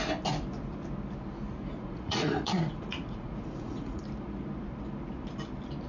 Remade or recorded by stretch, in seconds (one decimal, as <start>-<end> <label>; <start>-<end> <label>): 0.0-1.8 recorded; 1.8-4.0 remade; 4.0-5.9 recorded